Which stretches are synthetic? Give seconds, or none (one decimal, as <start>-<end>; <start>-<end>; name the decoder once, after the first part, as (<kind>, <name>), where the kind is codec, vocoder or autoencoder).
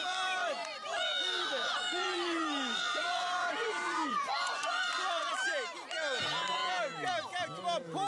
0.4-5.3 (vocoder, Vocos)